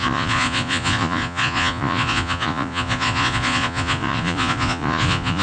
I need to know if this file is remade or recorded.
remade